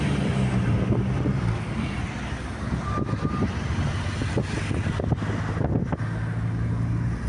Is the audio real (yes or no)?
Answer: yes